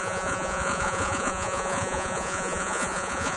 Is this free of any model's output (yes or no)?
no